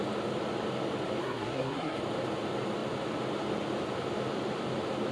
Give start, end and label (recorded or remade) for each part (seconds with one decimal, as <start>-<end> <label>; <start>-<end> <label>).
0.0-1.2 recorded; 1.2-2.0 remade; 2.0-5.1 recorded